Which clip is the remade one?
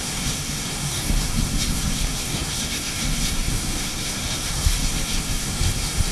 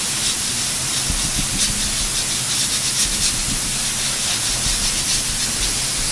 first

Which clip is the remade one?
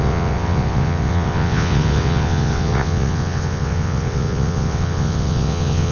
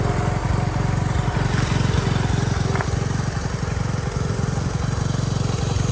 first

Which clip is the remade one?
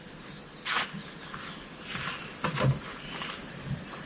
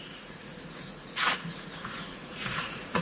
second